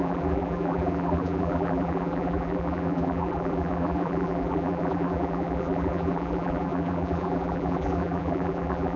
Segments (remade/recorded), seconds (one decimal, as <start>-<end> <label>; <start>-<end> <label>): 0.0-9.0 remade